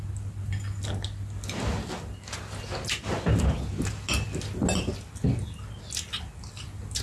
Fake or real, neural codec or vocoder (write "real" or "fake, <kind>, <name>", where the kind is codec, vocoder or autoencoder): real